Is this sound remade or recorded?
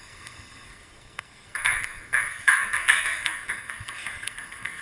remade